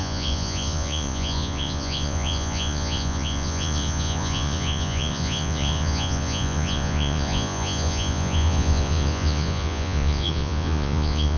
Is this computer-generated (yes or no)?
yes